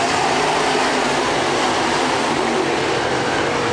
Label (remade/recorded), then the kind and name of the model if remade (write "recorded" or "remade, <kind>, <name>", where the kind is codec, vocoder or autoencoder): remade, vocoder, BigVGAN v2